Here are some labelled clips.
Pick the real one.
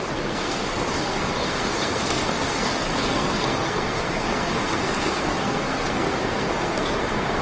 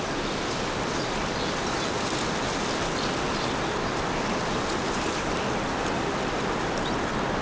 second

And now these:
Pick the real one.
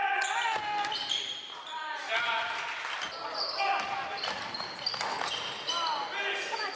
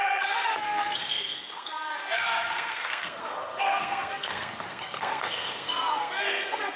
first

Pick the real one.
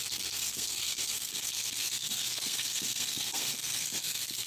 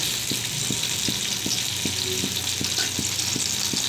second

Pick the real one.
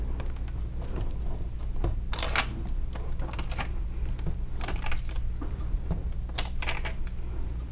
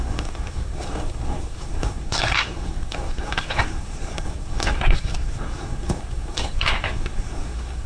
first